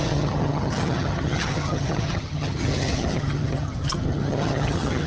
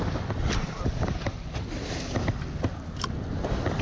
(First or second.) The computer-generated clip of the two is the first